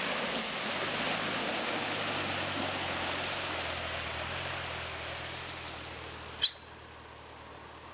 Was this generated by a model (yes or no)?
no